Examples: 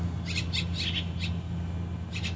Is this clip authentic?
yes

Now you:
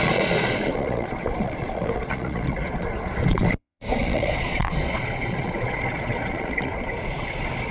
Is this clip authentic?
no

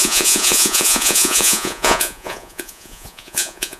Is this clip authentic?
no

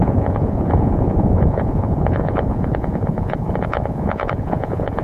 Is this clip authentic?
no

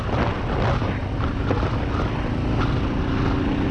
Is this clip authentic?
yes